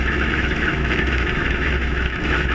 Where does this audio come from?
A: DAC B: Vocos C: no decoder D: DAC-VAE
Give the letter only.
D